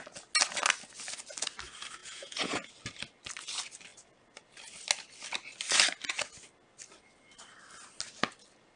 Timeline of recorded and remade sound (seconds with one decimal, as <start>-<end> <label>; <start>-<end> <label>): 0.0-2.0 recorded; 2.0-2.7 remade; 2.7-8.8 recorded